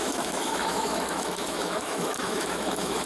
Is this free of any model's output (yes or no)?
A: no